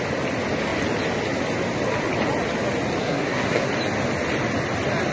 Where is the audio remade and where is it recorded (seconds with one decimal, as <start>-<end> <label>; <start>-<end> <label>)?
0.0-3.0 recorded; 3.0-3.7 remade; 3.7-5.1 recorded